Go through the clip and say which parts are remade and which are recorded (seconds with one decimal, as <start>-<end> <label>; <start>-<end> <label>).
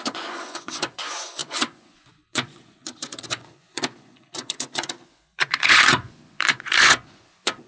0.0-7.7 remade